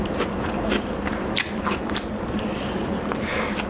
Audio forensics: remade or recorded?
remade